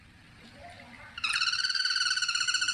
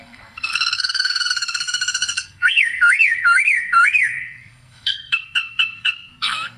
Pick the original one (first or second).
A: first